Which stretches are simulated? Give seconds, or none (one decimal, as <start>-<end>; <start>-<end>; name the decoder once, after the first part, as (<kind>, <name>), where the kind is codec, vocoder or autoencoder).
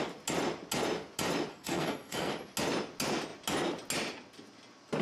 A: 1.5-2.3 (codec, SNAC)